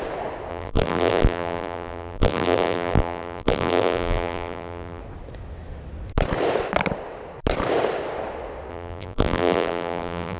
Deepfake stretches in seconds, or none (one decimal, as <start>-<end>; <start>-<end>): 0.5-5.0; 8.7-10.4